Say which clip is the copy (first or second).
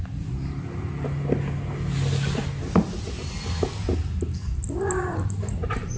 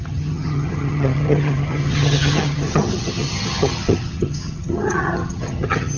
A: second